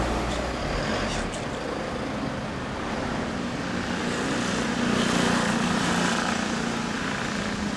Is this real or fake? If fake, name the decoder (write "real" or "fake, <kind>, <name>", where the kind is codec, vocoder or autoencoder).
real